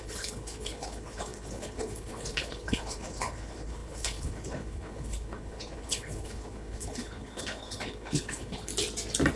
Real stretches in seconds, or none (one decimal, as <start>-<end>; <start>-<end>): 8.7-9.4